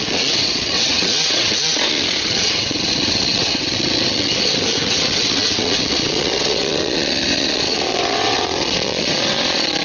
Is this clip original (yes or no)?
no